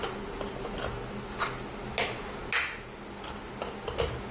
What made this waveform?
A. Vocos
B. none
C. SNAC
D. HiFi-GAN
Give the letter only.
B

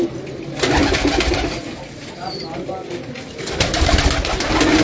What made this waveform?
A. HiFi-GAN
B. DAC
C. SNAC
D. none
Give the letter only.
D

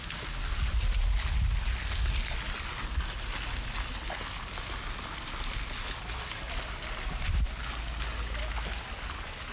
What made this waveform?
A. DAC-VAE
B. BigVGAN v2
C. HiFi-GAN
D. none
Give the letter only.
D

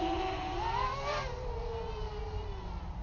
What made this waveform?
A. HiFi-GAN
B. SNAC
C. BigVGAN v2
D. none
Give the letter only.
D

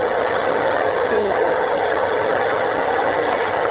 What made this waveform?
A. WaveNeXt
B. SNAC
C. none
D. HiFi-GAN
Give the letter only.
D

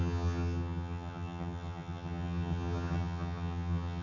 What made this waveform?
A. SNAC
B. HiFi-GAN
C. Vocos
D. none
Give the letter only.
B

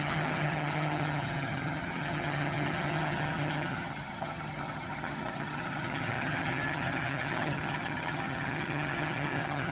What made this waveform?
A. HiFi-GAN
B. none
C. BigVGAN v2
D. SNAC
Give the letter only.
A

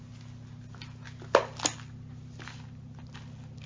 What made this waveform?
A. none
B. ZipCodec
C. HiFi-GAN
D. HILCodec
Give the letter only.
A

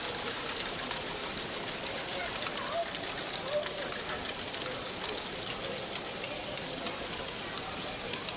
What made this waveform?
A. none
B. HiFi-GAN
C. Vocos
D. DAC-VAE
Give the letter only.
A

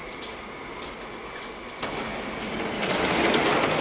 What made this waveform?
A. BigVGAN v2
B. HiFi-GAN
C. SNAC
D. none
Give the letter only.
D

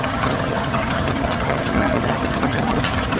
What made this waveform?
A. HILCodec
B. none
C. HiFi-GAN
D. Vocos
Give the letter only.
C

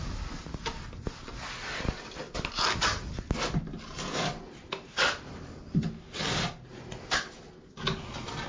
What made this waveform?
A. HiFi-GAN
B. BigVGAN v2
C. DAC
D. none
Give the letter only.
D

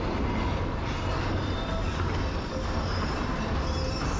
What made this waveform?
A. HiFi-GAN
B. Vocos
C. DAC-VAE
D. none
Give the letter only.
D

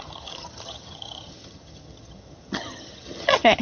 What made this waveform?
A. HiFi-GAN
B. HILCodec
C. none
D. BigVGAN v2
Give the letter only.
A